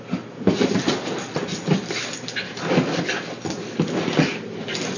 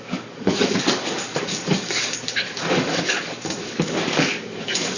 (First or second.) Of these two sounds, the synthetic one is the second